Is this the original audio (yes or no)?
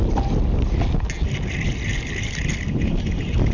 yes